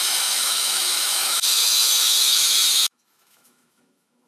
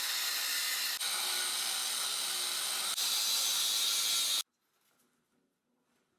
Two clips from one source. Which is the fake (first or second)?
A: first